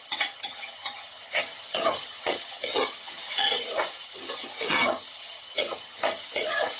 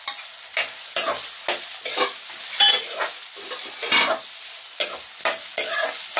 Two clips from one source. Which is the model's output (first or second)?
first